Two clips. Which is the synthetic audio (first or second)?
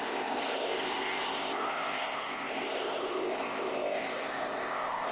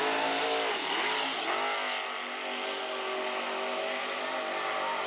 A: first